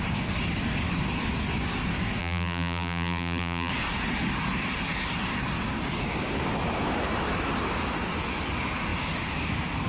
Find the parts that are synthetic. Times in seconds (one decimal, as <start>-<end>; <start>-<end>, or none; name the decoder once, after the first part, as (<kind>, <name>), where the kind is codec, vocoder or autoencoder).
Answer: 2.2-3.7 (vocoder, BigVGAN v2)